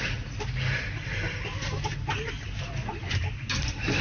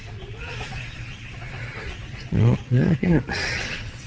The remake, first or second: second